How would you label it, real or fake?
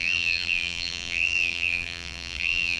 fake